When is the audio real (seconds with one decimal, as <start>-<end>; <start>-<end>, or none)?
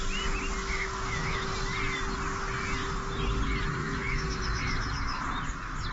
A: 0.0-0.6; 1.5-3.8; 5.2-5.9